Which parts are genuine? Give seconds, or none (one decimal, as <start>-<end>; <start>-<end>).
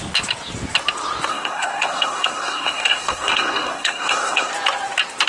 0.0-1.3; 4.5-5.3